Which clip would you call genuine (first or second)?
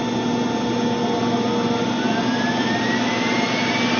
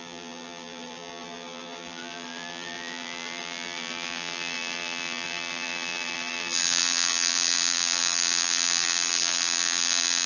first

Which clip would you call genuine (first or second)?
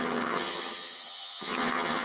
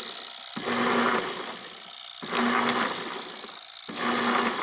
second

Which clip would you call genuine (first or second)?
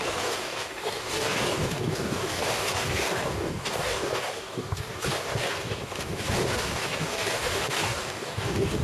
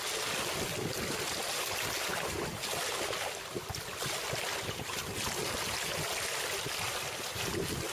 second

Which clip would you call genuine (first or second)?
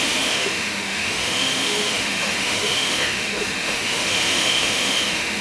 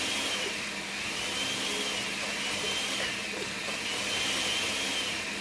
second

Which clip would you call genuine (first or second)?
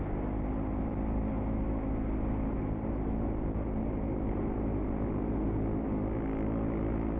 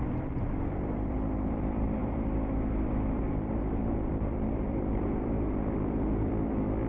first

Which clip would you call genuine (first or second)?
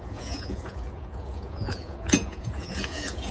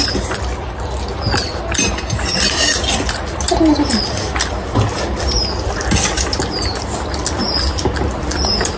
second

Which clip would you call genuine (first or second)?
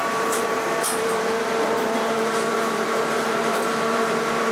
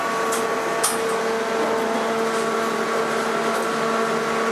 second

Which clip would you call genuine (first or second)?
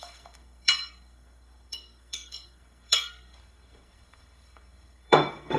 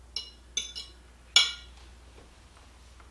second